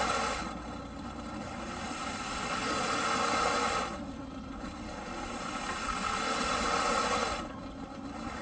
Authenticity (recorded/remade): recorded